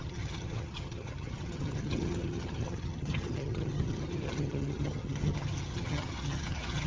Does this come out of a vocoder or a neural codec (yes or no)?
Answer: yes